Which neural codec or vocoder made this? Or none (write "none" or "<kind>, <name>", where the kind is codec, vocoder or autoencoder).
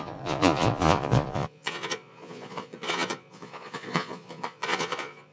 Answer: vocoder, Vocos